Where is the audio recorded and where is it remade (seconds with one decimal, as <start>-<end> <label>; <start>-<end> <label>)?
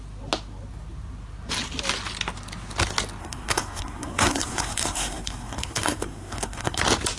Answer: 0.0-3.2 recorded; 3.2-6.8 remade; 6.8-7.2 recorded